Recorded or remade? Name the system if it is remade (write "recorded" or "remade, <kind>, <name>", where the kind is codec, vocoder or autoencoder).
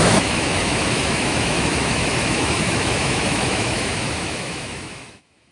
remade, autoencoder, DAC-VAE